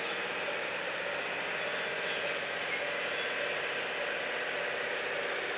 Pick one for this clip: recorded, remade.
recorded